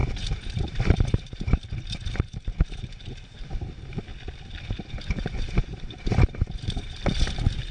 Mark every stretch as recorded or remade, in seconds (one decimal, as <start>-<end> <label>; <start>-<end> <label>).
0.0-4.1 remade; 4.1-5.0 recorded; 5.0-7.7 remade